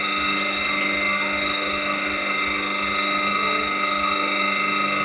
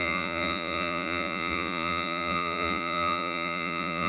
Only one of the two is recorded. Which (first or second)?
first